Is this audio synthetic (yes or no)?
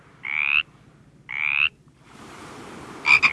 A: no